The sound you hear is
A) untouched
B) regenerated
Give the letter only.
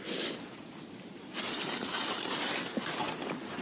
B